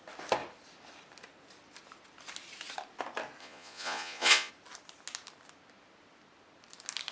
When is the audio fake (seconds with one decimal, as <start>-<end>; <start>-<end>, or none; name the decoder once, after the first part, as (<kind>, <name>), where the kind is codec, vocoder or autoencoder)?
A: 3.4-4.5 (vocoder, Vocos)